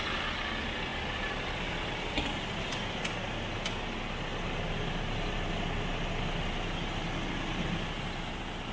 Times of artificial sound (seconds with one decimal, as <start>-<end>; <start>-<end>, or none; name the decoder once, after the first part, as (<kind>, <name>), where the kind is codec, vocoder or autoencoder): none